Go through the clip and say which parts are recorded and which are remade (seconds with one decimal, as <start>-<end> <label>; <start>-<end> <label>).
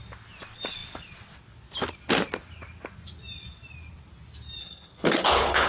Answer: 0.0-4.6 recorded; 4.6-5.7 remade